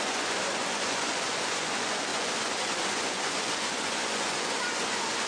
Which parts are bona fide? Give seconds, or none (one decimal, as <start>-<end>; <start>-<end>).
none